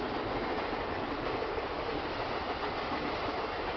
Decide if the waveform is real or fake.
real